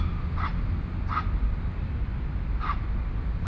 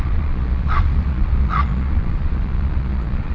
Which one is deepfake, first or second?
second